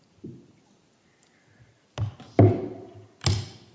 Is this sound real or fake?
real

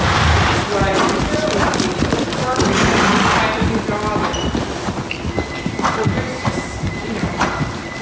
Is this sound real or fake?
real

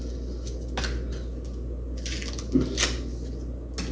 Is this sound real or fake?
real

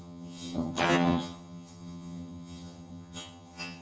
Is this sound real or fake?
fake